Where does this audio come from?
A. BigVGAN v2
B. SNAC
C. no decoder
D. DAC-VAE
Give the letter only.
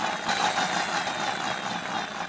C